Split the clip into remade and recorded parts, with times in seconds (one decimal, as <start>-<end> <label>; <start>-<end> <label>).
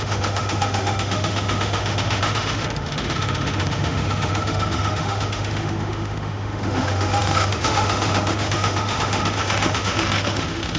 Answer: 0.0-10.8 remade